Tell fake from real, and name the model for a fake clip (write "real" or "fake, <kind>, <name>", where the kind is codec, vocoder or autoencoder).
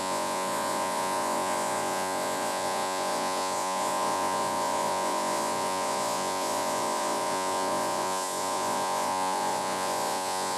fake, vocoder, Vocos